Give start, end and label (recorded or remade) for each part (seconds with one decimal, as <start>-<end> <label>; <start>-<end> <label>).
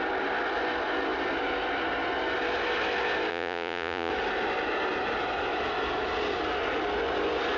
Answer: 0.0-3.3 recorded; 3.3-4.1 remade; 4.1-7.6 recorded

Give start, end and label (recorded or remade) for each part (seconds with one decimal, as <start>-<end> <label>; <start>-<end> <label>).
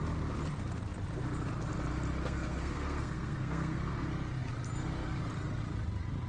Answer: 0.0-2.2 recorded; 2.2-3.8 remade; 3.8-6.3 recorded